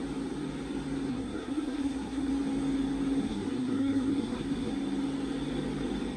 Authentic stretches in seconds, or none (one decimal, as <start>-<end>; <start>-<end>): 0.0-1.1; 2.3-3.2; 4.7-6.2